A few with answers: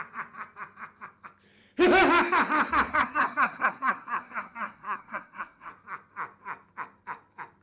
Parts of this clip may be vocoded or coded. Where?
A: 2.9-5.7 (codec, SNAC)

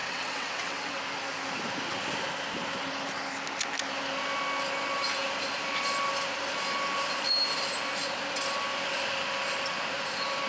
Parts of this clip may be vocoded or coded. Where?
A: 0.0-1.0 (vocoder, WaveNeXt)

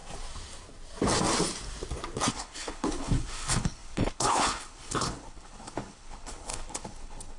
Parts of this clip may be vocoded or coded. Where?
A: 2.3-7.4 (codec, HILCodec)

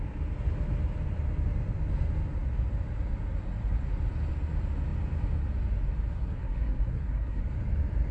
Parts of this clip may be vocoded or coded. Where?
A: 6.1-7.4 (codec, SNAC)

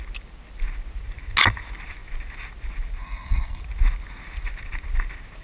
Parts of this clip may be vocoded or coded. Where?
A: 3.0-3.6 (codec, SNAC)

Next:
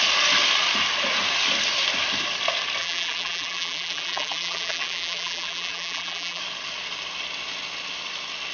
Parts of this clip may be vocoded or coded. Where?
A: 2.8-6.4 (vocoder, BigVGAN v2)

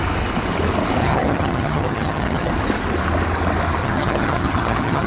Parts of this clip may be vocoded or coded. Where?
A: 1.0-2.5 (vocoder, HiFi-GAN); 3.8-5.1

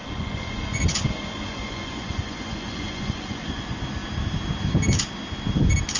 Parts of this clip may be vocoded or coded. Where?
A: 0.0-3.6 (vocoder, Vocos)